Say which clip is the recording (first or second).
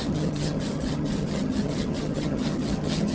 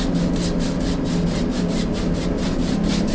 second